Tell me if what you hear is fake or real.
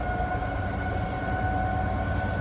real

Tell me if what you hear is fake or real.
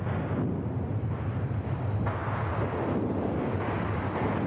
real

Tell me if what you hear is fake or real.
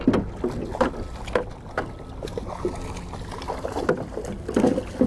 real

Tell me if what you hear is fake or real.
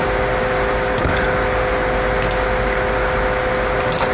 real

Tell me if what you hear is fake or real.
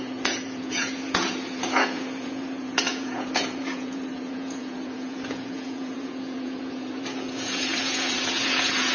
fake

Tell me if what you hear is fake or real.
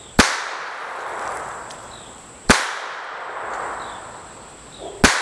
real